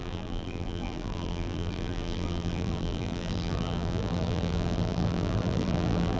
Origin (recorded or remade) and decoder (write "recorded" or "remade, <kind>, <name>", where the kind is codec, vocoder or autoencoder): remade, vocoder, BigVGAN v2